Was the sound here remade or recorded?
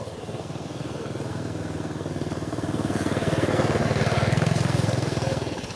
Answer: remade